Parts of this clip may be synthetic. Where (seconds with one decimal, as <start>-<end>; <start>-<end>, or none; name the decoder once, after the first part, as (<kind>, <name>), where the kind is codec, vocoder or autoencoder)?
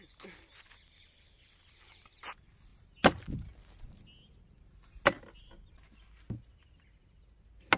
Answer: none